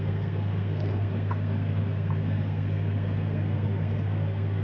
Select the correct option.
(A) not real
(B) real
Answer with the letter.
A